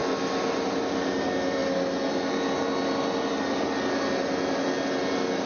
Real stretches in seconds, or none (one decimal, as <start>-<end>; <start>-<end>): 0.0-5.5